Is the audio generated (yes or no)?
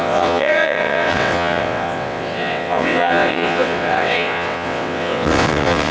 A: yes